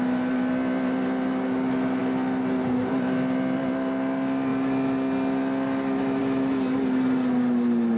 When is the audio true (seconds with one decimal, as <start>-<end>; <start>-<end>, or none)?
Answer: 0.0-8.0

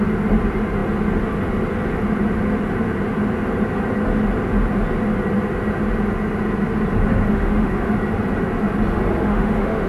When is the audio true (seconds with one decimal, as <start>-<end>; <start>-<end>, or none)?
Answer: 0.0-7.3; 7.9-9.3